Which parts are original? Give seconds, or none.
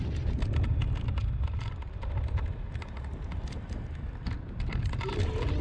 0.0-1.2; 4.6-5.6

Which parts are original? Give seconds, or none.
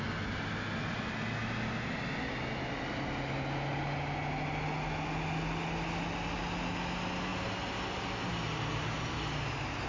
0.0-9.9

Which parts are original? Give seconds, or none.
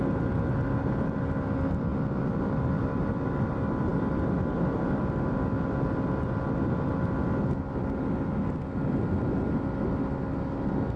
0.0-11.0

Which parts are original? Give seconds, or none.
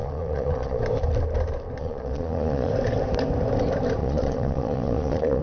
0.8-1.8; 2.7-4.0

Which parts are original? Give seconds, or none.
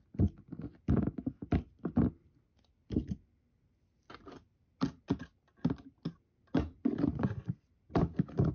0.0-8.5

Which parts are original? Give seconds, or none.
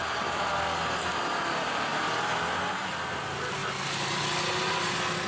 0.0-5.3